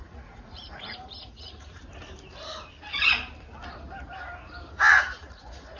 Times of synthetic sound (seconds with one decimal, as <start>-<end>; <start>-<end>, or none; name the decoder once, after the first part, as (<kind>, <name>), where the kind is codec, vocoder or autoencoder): 0.0-1.8 (vocoder, Vocos); 4.9-5.8